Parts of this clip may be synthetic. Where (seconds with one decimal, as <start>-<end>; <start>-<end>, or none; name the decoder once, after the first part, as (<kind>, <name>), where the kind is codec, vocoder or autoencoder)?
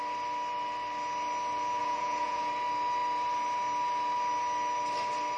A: 1.8-2.5 (vocoder, Vocos)